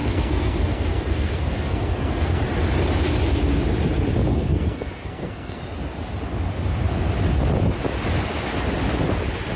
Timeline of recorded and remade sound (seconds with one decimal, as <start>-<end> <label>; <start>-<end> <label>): 0.0-2.4 remade; 2.4-4.3 recorded; 4.3-5.6 remade; 5.6-9.6 recorded